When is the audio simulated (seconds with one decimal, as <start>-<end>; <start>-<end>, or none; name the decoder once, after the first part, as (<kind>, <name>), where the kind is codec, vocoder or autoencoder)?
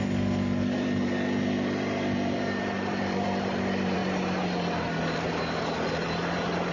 0.0-4.0 (vocoder, BigVGAN v2)